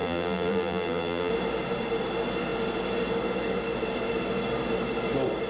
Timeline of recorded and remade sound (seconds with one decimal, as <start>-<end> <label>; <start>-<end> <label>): 0.0-1.3 remade; 1.3-5.5 recorded